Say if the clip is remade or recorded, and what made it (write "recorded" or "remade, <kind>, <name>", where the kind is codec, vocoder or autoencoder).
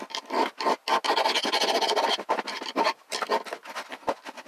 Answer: recorded